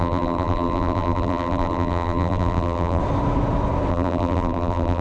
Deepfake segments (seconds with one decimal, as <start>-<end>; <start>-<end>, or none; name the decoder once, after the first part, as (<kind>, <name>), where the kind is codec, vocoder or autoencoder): 0.0-3.0 (vocoder, BigVGAN v2); 3.9-5.0